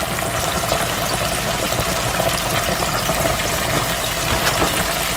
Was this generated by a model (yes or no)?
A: no